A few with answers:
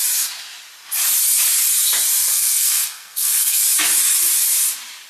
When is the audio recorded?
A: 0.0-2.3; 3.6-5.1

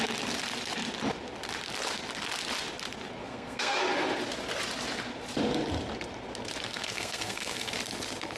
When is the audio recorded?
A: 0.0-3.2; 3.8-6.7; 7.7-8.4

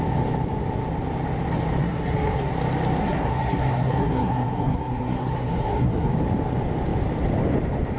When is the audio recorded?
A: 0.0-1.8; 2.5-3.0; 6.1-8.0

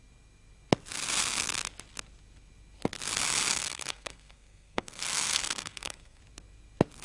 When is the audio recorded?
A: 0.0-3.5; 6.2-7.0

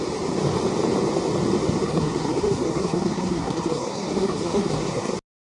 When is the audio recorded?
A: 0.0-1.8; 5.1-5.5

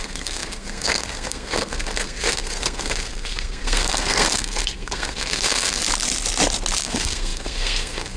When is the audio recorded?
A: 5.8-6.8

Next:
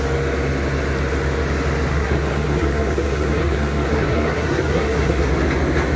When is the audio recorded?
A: 0.0-1.9; 5.3-6.0